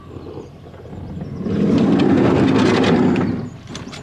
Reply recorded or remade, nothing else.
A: recorded